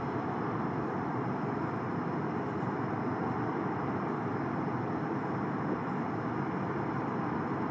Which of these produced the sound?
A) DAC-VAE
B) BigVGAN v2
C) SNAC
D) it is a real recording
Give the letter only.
B